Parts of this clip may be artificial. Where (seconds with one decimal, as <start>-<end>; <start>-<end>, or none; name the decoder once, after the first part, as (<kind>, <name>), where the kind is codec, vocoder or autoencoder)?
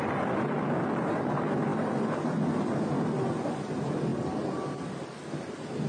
none